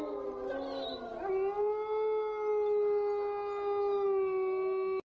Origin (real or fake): real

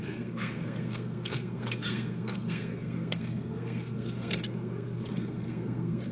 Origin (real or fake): fake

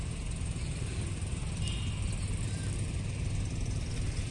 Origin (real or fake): real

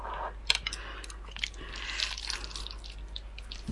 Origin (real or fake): real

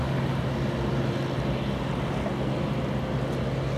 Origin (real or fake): real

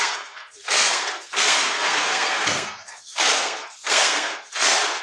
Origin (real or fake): fake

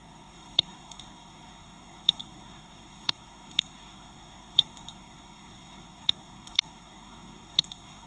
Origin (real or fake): fake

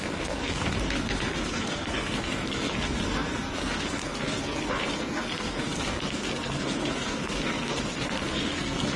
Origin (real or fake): fake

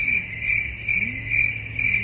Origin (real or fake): real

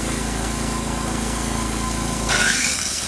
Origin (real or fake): fake